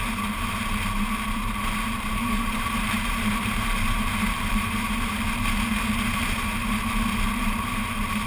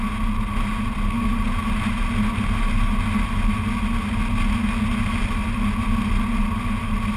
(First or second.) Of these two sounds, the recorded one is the second